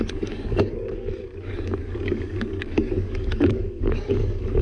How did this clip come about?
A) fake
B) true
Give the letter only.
A